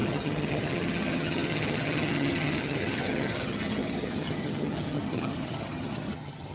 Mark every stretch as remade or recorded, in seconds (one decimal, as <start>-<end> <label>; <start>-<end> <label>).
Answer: 0.0-6.5 remade